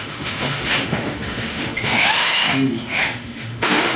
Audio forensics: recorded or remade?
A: remade